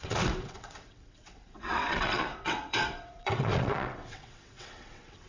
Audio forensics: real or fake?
fake